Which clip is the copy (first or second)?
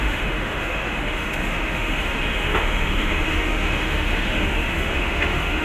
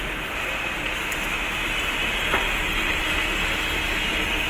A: first